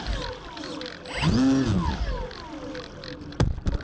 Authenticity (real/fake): real